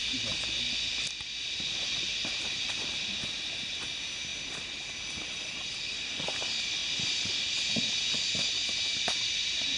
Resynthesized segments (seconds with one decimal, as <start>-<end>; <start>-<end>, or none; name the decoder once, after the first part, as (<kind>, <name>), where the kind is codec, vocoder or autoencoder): none